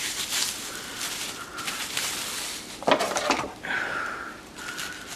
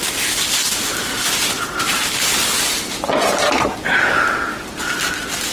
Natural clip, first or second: second